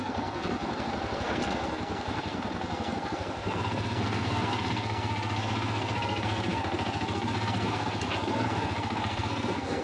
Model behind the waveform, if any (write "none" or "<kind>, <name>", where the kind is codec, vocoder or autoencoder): codec, SNAC